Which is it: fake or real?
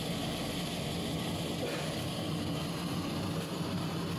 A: real